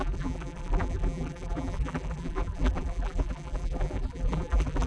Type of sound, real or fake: fake